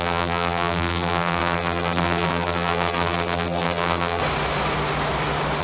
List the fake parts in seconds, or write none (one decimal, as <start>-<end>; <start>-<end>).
0.0-4.2